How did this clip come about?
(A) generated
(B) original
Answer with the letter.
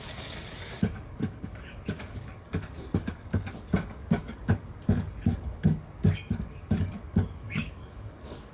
A